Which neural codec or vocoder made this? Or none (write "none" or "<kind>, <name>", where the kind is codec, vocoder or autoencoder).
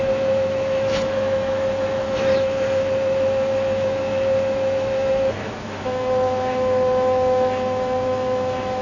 autoencoder, DAC-VAE